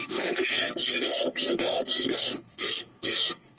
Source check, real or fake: fake